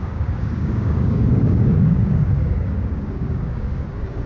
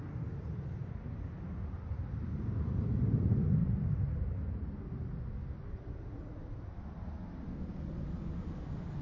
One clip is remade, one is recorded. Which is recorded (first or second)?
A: second